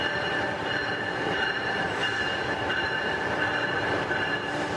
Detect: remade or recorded remade